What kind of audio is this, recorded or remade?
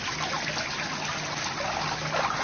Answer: recorded